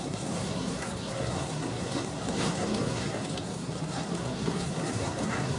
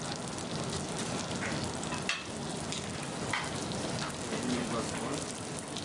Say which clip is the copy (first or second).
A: first